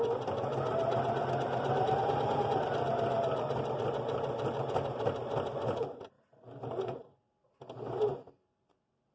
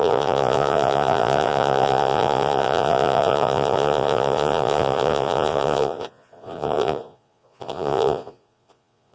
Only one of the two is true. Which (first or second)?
first